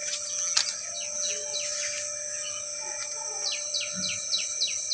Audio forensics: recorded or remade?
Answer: recorded